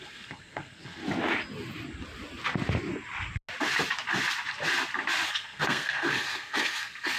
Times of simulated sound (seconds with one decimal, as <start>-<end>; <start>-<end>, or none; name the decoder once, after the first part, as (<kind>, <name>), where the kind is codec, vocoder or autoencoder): 0.0-1.0 (codec, SNAC); 5.3-7.2